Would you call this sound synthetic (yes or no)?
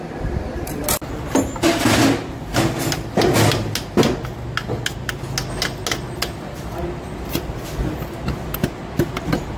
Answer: no